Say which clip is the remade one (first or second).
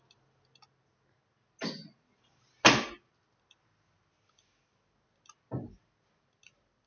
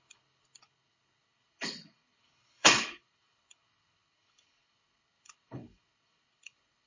second